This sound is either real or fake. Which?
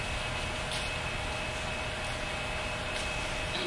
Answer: real